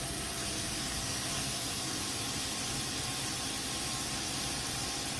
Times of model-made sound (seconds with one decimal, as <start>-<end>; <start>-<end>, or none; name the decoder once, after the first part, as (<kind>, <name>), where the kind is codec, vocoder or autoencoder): 0.4-2.0 (codec, SNAC)